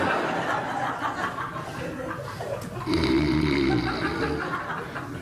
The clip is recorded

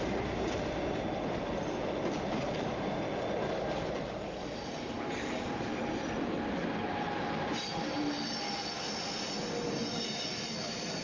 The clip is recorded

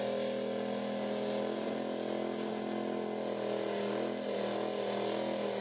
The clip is recorded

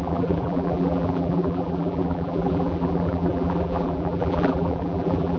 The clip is remade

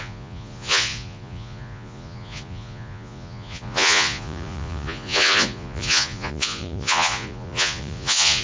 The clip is remade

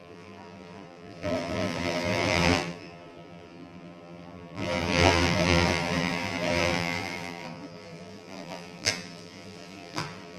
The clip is remade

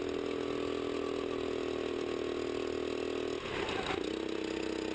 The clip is recorded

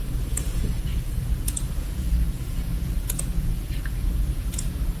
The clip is remade